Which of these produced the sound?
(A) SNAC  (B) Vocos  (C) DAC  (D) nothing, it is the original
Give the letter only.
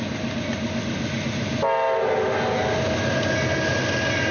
D